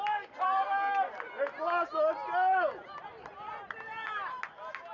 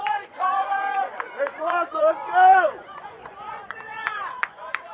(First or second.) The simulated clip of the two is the second